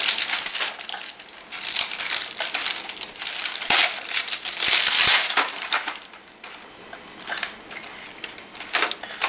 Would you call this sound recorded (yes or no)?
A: yes